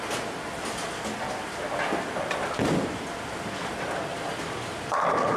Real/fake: real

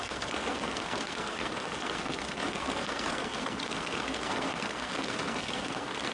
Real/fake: fake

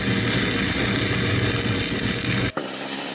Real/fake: real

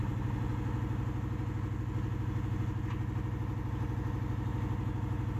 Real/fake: real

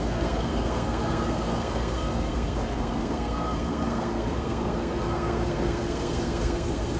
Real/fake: fake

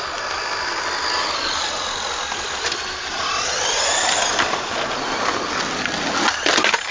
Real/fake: real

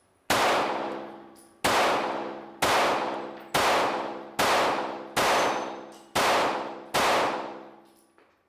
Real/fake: real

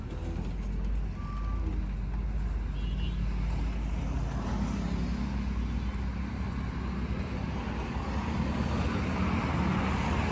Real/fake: real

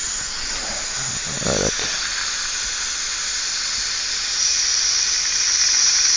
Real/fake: real